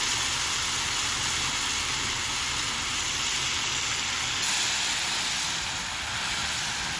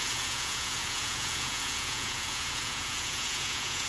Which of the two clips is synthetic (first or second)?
second